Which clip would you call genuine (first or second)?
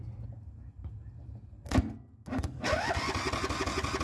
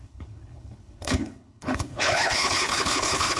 first